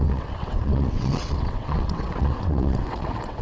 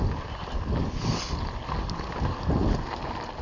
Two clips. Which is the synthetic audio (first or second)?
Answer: first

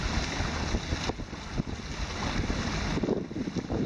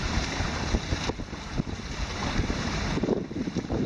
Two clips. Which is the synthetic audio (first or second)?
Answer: second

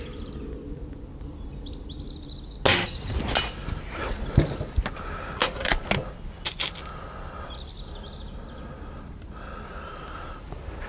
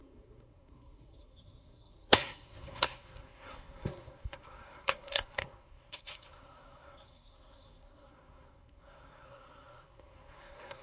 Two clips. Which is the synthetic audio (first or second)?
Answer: second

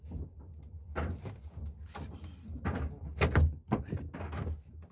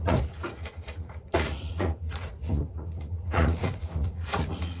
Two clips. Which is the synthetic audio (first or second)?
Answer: second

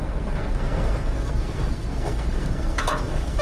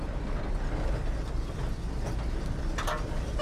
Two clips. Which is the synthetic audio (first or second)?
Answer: first